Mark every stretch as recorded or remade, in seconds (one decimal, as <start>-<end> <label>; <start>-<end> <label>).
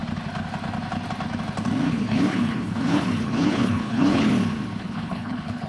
0.0-1.9 recorded; 1.9-4.3 remade; 4.3-4.8 recorded; 4.8-5.7 remade